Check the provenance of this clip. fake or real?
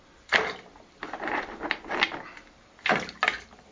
real